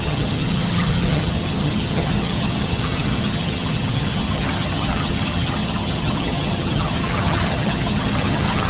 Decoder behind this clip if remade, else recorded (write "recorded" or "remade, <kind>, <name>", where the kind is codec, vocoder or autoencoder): remade, vocoder, HiFi-GAN